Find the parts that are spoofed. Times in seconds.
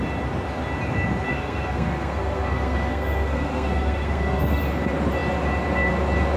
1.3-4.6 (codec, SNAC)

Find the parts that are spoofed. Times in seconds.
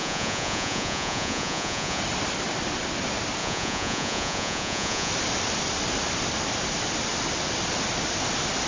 0.0-2.0 (vocoder, Vocos); 3.4-5.1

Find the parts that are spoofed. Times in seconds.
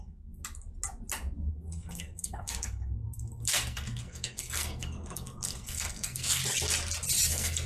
0.0-0.4 (codec, SNAC); 1.5-6.4; 7.3-7.7